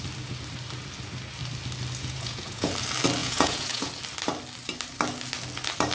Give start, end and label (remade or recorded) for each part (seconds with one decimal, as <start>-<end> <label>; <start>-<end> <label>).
0.0-2.0 recorded; 2.0-2.7 remade; 2.7-3.2 recorded; 3.2-3.9 remade; 3.9-5.9 recorded